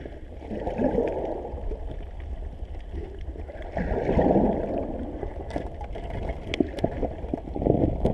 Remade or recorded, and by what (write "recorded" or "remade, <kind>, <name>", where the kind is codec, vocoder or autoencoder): recorded